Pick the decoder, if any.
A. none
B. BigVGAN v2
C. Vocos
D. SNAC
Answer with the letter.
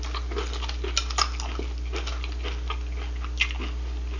A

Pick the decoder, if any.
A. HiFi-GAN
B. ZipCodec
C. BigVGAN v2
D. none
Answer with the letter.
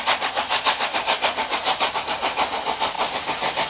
D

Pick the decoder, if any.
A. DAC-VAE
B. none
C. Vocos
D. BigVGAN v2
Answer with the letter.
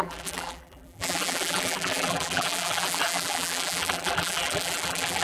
D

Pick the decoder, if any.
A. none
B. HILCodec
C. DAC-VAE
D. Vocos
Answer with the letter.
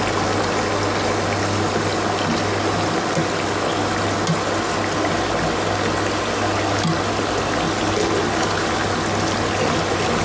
A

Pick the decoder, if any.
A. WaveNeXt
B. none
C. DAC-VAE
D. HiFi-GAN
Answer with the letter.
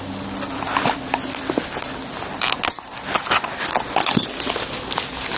B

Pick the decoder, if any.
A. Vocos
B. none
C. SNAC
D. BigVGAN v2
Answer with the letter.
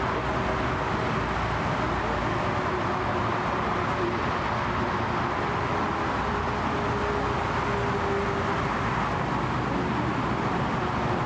B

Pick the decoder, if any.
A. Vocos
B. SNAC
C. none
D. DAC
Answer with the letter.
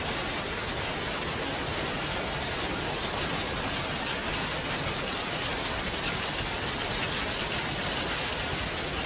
C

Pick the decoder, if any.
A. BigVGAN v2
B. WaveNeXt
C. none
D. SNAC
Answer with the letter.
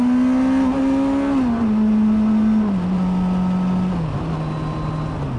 C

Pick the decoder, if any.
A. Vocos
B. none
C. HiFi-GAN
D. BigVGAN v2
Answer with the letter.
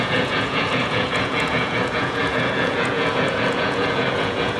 A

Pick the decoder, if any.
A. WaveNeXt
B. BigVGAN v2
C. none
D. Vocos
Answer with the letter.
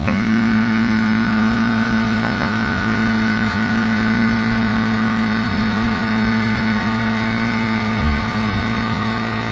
D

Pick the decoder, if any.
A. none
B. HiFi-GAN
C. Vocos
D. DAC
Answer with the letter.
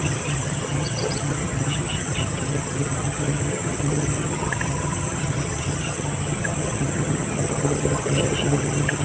B